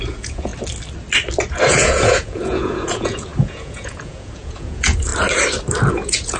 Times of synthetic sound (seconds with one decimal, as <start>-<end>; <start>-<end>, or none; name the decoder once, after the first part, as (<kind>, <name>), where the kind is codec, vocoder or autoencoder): 0.0-0.5 (vocoder, Vocos); 1.7-5.1; 5.9-6.4